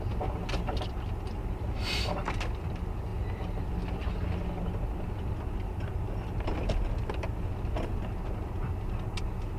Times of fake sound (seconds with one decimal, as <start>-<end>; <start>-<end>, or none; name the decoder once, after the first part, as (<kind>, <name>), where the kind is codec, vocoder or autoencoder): none